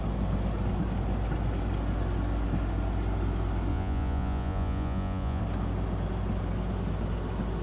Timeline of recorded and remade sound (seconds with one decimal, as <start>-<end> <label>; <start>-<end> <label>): 0.0-3.7 recorded; 3.7-5.4 remade; 5.4-7.6 recorded